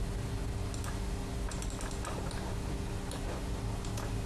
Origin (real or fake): real